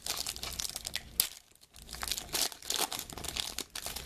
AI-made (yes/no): no